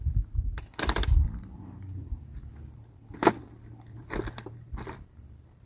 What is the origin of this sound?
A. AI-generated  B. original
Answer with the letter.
A